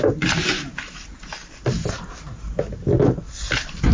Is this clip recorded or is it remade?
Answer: recorded